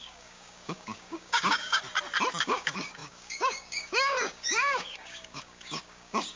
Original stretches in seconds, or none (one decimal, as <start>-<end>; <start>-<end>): 1.8-2.3